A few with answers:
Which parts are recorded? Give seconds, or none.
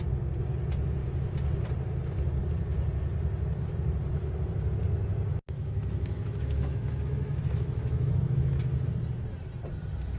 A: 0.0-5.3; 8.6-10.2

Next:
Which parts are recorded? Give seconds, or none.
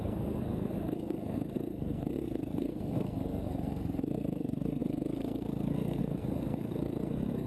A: none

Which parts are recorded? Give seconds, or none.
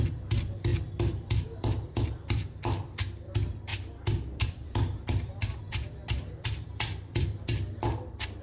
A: none